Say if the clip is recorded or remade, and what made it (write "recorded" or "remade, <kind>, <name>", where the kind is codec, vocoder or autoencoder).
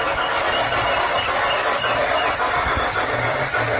recorded